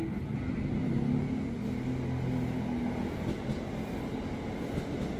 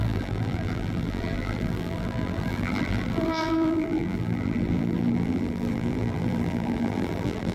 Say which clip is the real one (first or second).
first